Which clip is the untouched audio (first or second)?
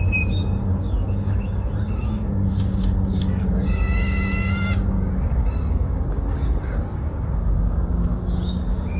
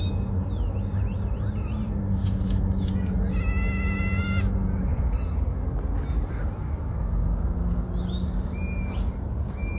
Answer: second